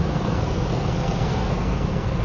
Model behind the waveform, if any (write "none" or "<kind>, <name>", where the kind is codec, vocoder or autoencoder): codec, SNAC